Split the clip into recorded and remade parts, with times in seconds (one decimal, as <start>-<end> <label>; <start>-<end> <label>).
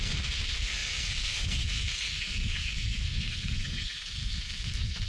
0.0-5.1 remade